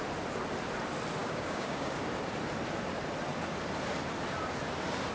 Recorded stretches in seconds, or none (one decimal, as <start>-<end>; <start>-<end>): 0.0-1.2; 2.0-5.1